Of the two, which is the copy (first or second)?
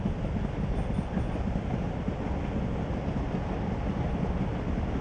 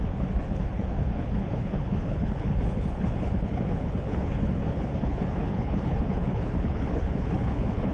second